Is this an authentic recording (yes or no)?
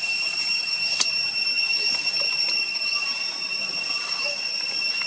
yes